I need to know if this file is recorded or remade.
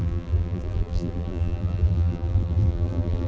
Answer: remade